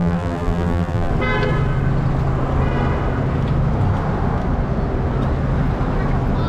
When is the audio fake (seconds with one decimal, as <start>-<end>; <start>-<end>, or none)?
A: 0.0-1.1